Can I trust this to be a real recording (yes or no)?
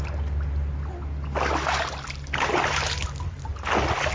yes